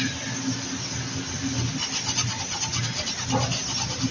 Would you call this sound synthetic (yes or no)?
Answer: no